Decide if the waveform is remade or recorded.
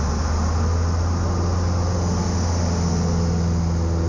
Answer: recorded